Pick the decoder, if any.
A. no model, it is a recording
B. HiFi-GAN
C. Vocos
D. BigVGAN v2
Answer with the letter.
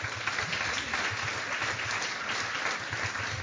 A